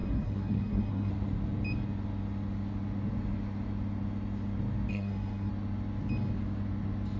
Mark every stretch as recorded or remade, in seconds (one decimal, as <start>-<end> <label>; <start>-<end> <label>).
0.0-1.1 remade; 1.1-4.9 recorded; 4.9-5.5 remade; 5.5-7.2 recorded

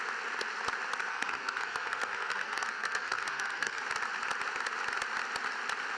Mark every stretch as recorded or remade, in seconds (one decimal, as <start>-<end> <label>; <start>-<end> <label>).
0.0-1.1 recorded; 1.1-3.8 remade; 3.8-6.0 recorded

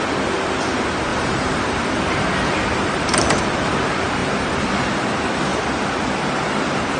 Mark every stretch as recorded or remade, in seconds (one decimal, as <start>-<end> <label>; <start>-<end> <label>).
0.0-1.1 recorded; 1.1-3.7 remade; 3.7-4.2 recorded; 4.2-4.7 remade; 4.7-7.0 recorded

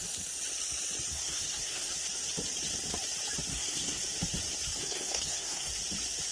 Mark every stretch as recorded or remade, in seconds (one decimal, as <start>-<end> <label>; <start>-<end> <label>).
0.0-1.1 recorded; 1.1-1.9 remade; 1.9-3.5 recorded; 3.5-4.0 remade; 4.0-4.8 recorded; 4.8-5.7 remade; 5.7-6.3 recorded